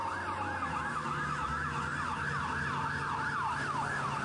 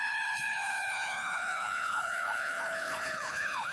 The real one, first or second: first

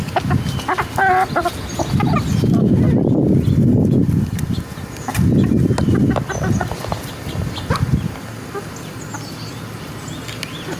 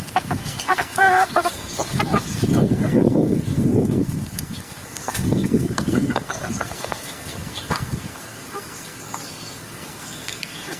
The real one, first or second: first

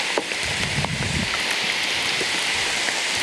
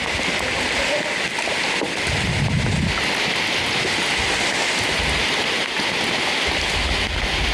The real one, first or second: second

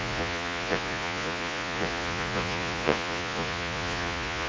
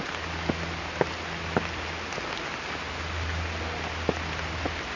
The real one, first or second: second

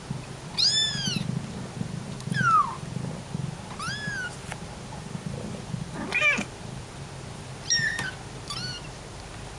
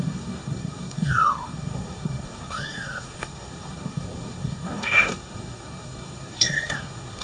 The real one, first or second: first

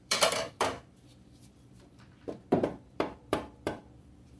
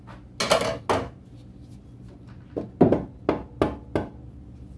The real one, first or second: second